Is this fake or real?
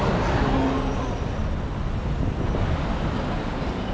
real